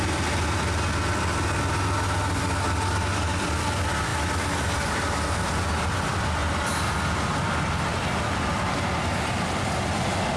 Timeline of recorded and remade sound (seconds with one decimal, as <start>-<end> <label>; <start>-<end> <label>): 0.0-6.4 recorded; 6.4-8.7 remade; 8.7-10.4 recorded